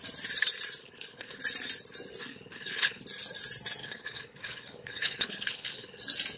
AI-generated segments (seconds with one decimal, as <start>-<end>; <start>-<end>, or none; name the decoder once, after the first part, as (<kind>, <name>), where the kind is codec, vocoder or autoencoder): 0.8-1.4 (codec, HILCodec); 2.2-3.0; 3.8-6.0